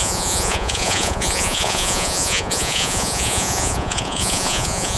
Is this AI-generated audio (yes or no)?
yes